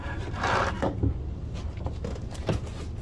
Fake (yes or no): no